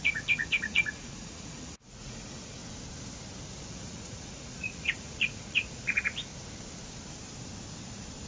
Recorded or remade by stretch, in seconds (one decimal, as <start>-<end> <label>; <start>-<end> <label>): 0.0-2.6 remade; 2.6-3.7 recorded; 3.7-6.3 remade; 6.3-8.3 recorded